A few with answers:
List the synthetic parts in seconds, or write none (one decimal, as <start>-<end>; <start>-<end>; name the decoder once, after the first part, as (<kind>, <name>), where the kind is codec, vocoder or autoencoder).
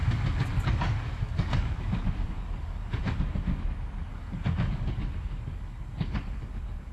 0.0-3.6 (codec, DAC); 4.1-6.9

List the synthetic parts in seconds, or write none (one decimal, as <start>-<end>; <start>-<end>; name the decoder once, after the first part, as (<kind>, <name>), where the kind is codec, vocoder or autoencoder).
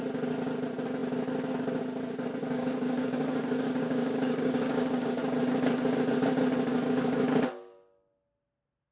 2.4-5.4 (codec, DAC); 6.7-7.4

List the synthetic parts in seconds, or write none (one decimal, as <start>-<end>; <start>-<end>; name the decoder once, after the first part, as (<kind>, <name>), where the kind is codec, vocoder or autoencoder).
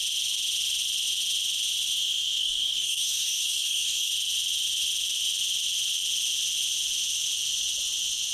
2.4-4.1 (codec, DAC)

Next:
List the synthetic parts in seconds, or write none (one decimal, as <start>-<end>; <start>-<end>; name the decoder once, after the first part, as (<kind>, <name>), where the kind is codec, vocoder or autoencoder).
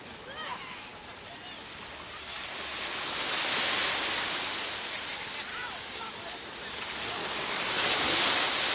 5.5-6.1 (codec, DAC); 7.2-7.9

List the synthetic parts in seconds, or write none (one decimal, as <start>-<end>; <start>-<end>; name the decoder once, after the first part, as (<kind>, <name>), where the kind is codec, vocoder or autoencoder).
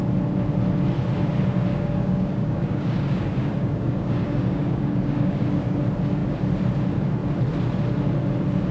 1.7-5.8 (codec, DAC)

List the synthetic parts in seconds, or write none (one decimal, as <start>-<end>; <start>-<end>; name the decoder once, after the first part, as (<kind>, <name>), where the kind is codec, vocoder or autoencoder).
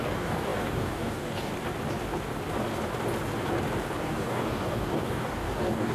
0.0-1.5 (codec, DAC); 4.0-5.9